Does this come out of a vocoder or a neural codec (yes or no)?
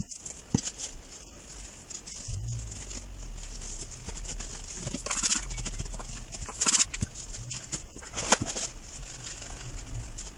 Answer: no